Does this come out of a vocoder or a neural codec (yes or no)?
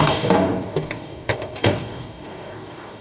yes